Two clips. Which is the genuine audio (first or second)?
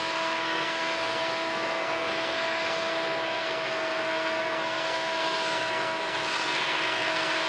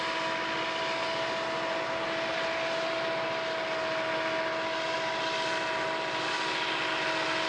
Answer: second